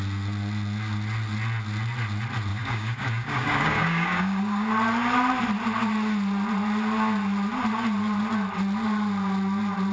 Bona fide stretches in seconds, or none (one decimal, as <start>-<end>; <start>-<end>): 0.0-2.5; 4.7-9.9